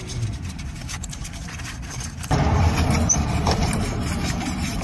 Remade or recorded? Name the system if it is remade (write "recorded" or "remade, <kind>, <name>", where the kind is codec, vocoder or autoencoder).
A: remade, vocoder, BigVGAN v2